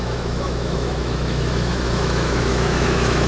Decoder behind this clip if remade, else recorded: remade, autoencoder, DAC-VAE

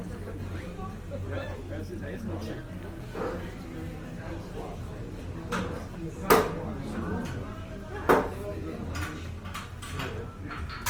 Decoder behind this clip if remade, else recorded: recorded